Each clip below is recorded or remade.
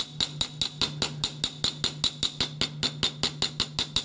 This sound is recorded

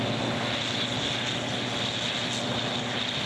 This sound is recorded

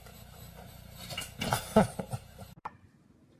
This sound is remade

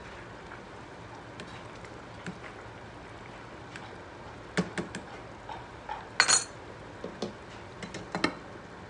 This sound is recorded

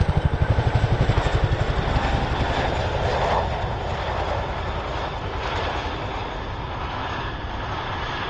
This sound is recorded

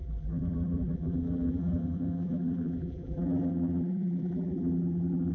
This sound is remade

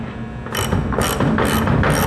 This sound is recorded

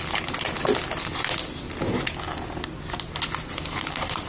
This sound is recorded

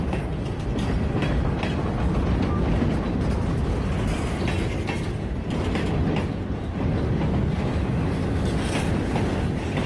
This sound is recorded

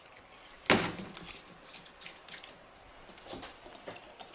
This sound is recorded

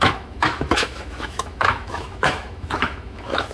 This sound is remade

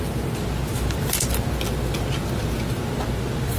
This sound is recorded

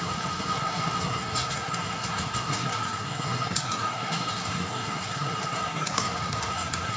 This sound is remade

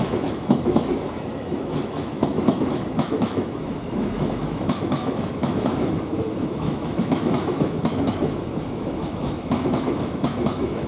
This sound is remade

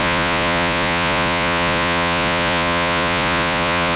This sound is remade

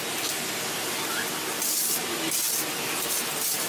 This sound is recorded